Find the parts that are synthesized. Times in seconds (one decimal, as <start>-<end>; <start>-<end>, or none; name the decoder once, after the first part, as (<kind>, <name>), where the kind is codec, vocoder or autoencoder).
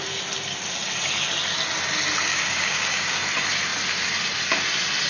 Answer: 2.3-3.2 (codec, DAC)